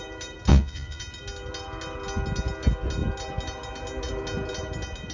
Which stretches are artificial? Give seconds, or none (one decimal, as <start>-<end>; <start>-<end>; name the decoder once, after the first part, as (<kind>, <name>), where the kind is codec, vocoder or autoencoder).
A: 0.5-1.0 (vocoder, Vocos)